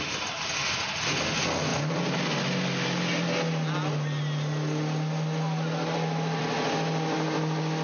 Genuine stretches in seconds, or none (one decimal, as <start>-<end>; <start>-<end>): 0.0-7.8